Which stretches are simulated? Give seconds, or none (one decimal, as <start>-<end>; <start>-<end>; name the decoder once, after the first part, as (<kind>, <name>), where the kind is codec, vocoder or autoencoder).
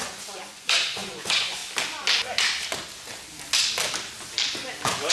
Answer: 0.0-1.6 (vocoder, Vocos)